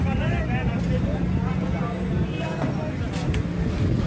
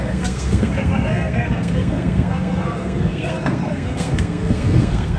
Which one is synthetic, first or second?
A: second